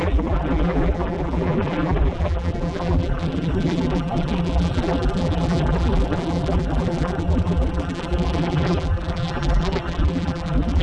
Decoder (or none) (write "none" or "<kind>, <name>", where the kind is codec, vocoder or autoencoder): vocoder, BigVGAN v2